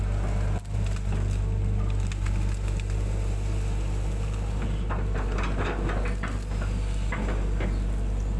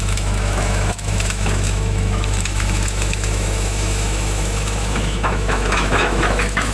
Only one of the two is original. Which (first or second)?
first